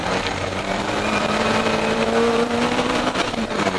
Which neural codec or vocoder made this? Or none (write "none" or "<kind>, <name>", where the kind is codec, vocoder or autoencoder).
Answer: vocoder, BigVGAN v2